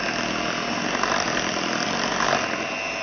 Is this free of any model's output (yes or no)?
yes